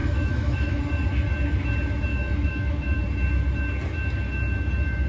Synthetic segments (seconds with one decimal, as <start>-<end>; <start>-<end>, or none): 0.0-0.8; 2.1-3.0